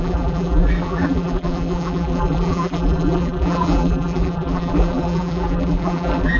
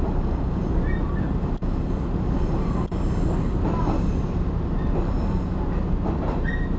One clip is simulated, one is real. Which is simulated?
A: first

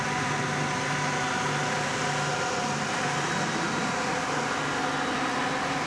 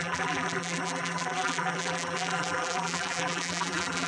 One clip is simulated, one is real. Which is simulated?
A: second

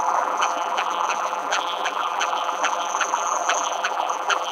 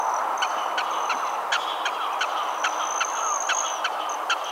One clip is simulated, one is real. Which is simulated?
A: first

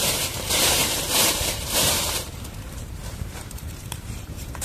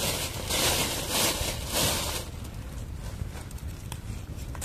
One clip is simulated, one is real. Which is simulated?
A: first